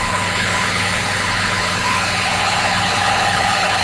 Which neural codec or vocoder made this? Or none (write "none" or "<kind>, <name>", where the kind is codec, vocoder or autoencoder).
codec, HILCodec